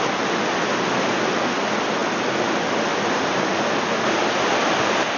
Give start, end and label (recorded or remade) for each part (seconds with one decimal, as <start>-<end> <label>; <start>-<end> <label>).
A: 0.0-5.2 recorded